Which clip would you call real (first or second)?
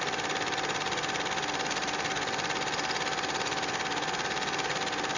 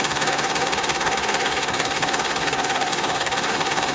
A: first